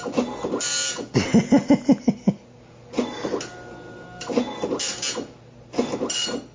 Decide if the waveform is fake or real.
real